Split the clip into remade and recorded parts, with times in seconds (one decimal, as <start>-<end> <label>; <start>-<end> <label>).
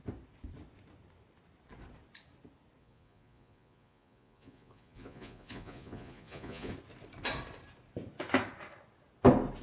0.0-2.8 recorded; 2.8-6.7 remade; 6.7-9.6 recorded